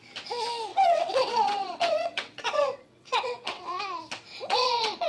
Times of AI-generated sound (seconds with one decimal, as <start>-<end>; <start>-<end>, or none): 0.7-3.8; 4.3-5.1